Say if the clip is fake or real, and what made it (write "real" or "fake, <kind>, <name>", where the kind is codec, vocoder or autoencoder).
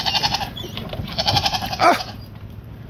fake, vocoder, BigVGAN v2